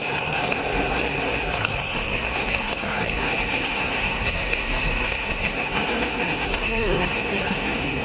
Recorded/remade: remade